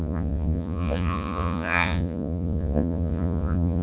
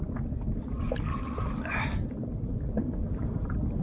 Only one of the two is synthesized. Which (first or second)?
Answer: first